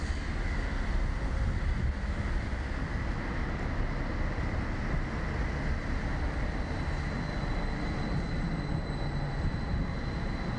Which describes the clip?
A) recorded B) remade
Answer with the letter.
A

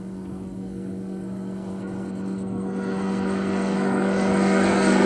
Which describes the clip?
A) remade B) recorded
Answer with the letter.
A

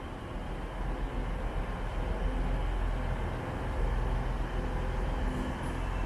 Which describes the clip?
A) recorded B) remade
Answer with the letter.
A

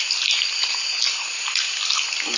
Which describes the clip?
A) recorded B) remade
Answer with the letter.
A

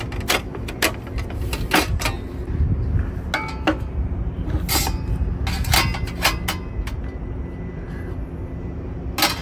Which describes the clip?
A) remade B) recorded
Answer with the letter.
B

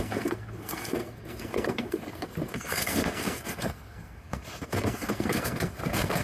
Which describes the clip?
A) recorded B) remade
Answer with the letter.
B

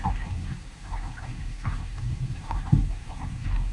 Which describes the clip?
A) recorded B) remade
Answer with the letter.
B